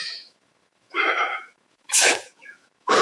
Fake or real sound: fake